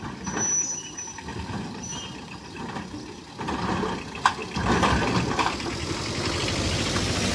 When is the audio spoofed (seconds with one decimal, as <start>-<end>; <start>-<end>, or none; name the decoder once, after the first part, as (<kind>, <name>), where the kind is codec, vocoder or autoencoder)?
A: 0.0-4.4 (vocoder, BigVGAN v2); 5.9-7.3